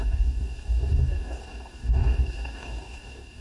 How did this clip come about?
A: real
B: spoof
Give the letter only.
B